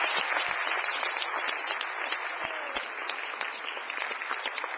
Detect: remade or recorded recorded